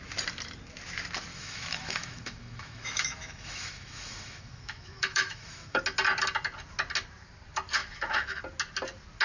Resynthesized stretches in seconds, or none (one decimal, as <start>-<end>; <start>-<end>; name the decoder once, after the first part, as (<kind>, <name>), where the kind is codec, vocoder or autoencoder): 1.3-5.8 (autoencoder, DAC-VAE); 7.8-8.4